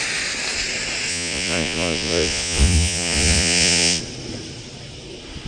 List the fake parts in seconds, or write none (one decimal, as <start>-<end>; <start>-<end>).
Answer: 1.1-4.0